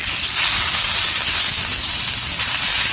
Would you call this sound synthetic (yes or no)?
no